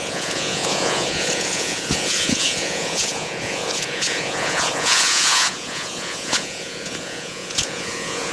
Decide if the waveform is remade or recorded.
remade